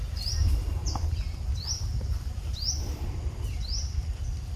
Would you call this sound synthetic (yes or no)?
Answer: yes